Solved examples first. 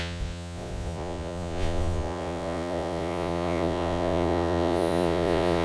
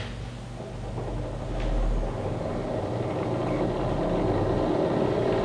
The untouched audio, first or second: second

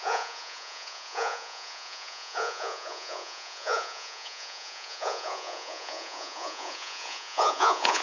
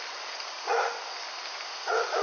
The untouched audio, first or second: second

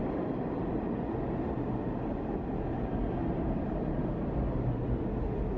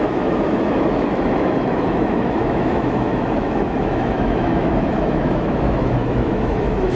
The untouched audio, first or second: first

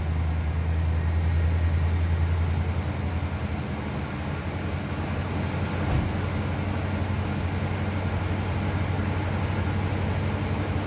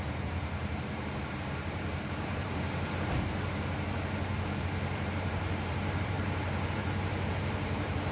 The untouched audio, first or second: first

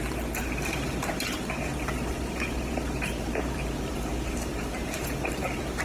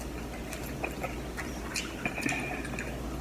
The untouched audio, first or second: second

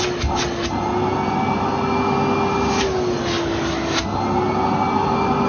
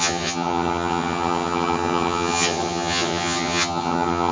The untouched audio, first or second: first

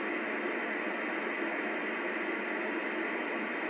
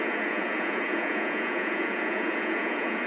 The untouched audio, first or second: first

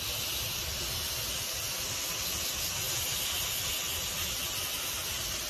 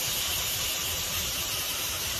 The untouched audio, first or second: first